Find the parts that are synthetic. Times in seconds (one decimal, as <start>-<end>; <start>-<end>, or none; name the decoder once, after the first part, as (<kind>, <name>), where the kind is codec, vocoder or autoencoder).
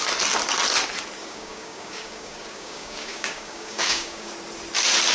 1.2-4.3 (codec, DAC)